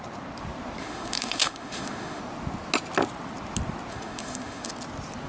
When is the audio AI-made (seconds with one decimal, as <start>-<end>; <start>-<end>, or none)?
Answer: 0.8-2.2; 3.9-4.7